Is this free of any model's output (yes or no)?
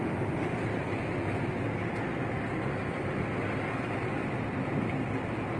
yes